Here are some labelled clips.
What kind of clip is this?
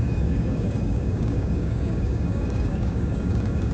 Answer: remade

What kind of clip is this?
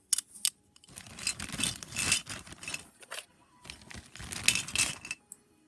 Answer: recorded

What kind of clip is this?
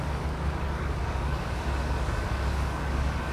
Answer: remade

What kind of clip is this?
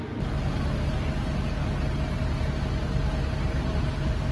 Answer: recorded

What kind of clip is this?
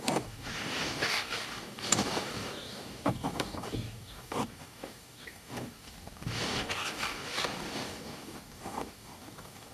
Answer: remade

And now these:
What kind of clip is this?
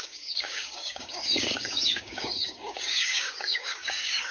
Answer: remade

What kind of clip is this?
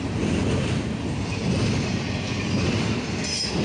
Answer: recorded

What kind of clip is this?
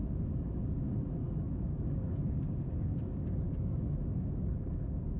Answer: remade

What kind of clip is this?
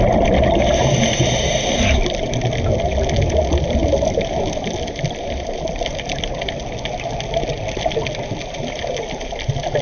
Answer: recorded